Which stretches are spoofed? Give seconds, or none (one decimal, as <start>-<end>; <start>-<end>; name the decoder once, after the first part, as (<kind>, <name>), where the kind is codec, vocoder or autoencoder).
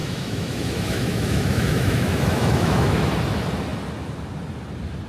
0.0-3.1 (autoencoder, DAC-VAE)